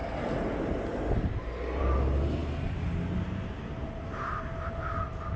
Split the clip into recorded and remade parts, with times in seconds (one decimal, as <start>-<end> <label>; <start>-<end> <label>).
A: 0.0-5.4 recorded